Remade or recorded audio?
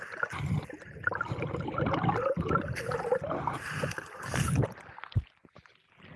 recorded